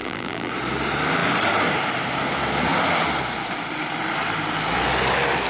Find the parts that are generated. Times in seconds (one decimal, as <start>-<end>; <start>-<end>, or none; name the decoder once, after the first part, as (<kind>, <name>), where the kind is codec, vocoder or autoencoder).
0.0-0.5 (vocoder, BigVGAN v2)